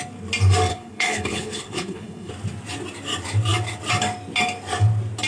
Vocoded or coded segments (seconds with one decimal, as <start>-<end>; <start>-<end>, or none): 0.7-2.3